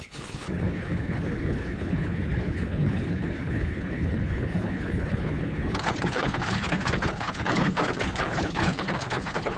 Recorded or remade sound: remade